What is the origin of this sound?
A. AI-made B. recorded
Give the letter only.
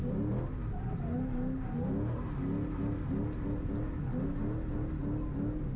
B